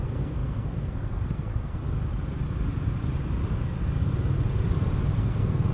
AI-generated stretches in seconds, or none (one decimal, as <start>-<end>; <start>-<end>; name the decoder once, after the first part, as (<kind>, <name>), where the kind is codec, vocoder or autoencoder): 0.0-1.8 (codec, SNAC); 5.2-5.7